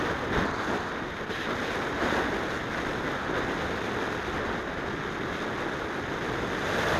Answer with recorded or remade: recorded